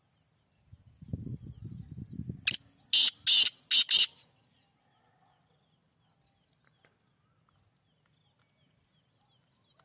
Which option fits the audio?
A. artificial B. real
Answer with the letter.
B